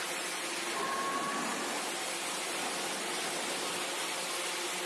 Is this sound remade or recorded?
recorded